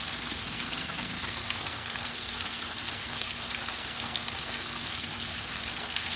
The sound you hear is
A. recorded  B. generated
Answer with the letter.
B